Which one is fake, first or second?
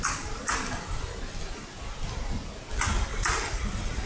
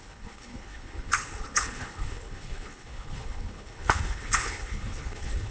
second